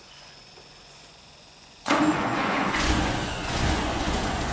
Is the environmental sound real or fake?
fake